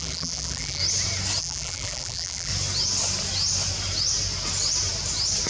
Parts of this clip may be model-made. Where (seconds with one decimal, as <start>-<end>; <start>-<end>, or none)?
0.0-0.8; 1.4-2.5